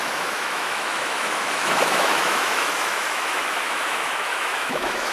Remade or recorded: remade